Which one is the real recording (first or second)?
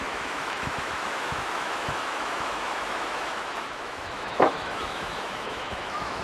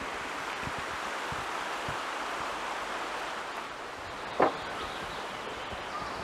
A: second